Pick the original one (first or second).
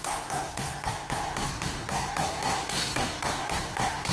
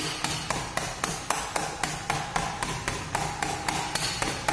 second